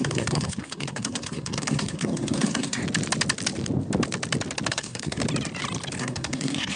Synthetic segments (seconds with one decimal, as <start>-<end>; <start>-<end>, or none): 0.0-2.8; 4.7-5.2; 6.0-6.8

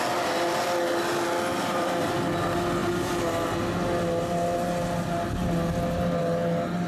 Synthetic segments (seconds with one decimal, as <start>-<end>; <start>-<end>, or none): 1.5-2.1

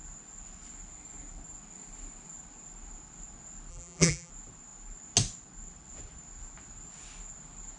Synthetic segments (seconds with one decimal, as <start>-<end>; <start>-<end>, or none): 3.7-4.3

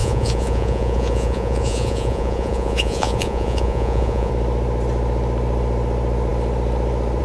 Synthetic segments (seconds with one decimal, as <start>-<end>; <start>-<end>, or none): 0.0-4.3

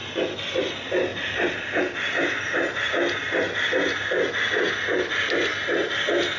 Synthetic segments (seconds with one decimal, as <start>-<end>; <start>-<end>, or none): none

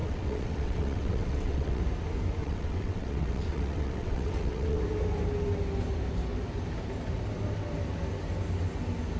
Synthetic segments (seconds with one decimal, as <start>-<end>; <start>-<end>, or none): 0.0-1.8; 2.4-4.8

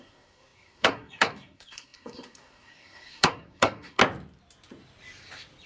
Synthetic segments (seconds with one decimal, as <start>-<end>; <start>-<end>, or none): 0.0-4.0

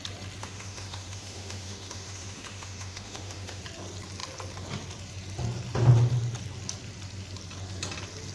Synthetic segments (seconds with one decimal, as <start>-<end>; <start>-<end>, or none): 0.4-3.6